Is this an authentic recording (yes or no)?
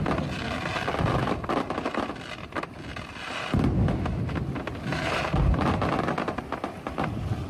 yes